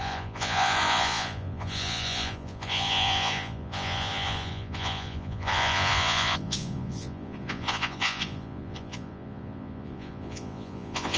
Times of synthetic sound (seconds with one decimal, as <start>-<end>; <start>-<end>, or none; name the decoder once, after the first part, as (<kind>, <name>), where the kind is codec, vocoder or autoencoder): 0.0-11.2 (vocoder, Vocos)